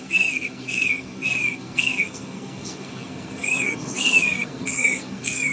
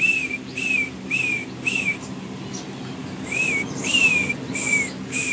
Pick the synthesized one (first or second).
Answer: first